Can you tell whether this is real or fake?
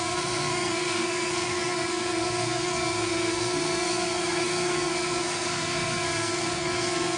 fake